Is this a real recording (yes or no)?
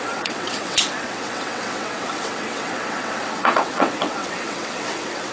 no